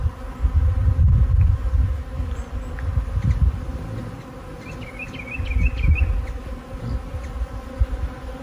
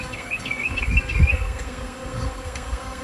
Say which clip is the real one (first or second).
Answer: first